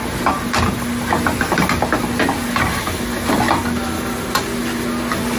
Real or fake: real